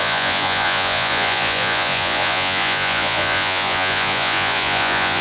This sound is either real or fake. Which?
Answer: fake